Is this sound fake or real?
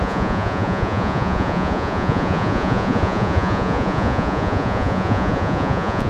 fake